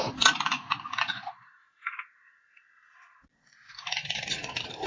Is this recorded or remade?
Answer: recorded